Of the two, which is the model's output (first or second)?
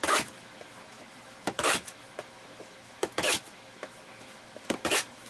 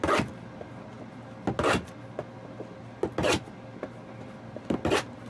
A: first